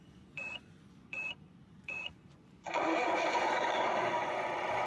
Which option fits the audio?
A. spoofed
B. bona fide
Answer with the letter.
A